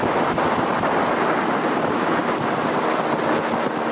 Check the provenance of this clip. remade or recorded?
recorded